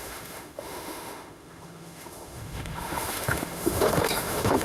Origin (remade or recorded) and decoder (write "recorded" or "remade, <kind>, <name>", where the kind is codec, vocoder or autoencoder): remade, autoencoder, DAC-VAE